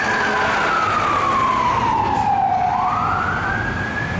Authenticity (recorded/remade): recorded